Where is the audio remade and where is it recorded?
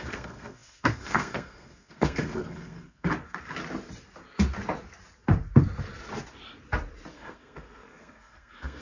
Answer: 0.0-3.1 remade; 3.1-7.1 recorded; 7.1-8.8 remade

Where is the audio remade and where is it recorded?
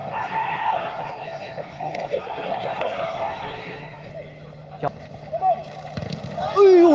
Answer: 0.0-4.1 remade; 4.1-6.9 recorded